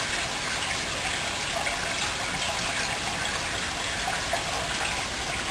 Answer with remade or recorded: recorded